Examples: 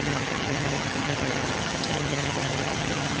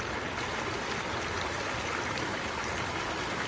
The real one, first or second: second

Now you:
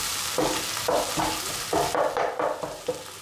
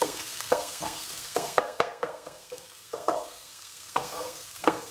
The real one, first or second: first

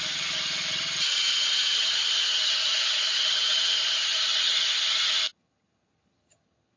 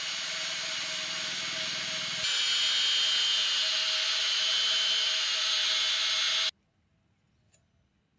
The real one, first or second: second